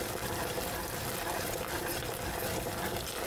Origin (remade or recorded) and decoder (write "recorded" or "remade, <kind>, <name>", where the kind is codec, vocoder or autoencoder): recorded